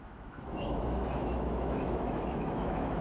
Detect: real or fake fake